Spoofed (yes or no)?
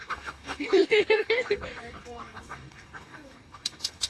yes